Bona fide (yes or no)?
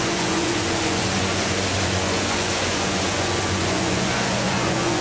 no